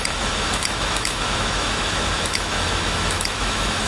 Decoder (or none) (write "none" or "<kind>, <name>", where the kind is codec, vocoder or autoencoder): autoencoder, DAC-VAE